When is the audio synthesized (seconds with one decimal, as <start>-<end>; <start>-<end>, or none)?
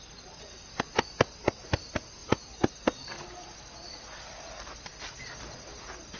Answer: none